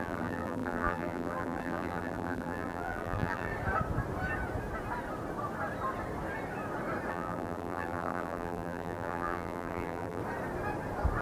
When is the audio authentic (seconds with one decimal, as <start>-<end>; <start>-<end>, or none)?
3.5-7.1; 10.2-11.2